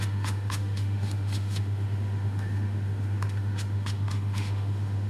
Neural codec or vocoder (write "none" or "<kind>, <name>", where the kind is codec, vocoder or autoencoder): autoencoder, DAC-VAE